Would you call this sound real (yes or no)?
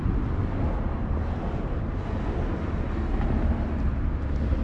yes